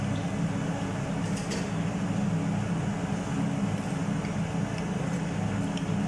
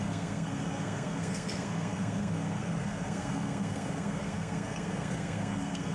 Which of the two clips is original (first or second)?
first